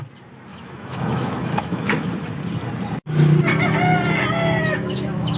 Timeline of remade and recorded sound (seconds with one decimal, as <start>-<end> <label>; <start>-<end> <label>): 0.0-0.5 recorded; 0.5-2.1 remade; 2.1-4.6 recorded; 4.6-5.4 remade